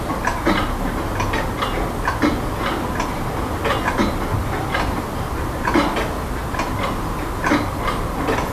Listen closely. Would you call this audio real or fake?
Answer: real